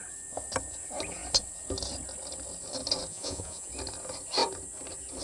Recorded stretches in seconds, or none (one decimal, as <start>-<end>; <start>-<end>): 0.0-3.1; 3.7-5.2